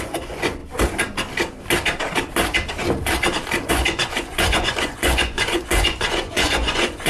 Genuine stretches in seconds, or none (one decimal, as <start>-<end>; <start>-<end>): 0.6-3.7